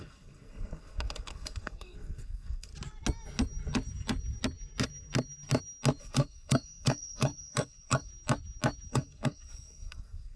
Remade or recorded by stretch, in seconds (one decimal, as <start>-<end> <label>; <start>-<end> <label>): 0.0-2.7 remade; 2.7-6.0 recorded; 6.0-8.1 remade; 8.1-8.9 recorded; 8.9-10.4 remade